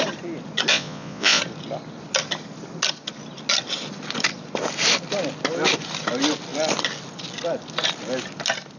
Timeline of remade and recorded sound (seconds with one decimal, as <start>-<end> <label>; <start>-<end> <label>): 0.0-0.7 recorded; 0.7-1.4 remade; 1.4-8.8 recorded